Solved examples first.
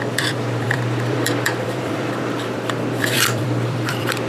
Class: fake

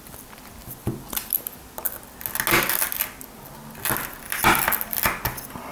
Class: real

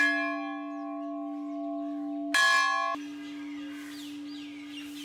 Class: real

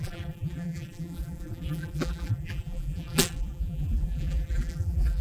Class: fake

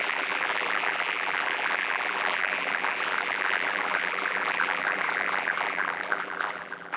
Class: fake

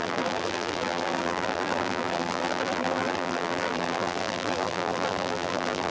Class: fake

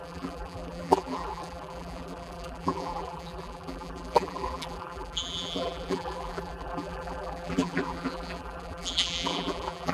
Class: fake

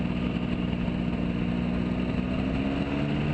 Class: real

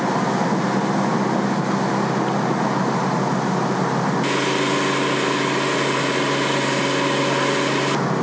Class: real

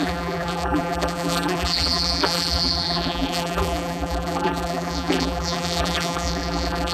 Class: fake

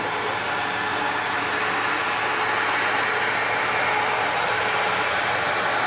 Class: real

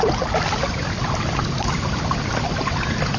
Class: fake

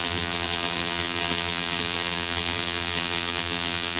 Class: fake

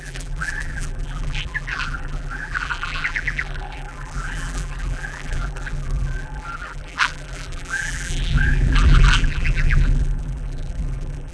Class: fake